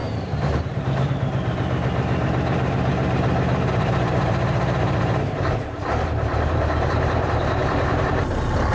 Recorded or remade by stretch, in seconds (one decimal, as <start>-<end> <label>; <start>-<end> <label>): 0.0-8.7 remade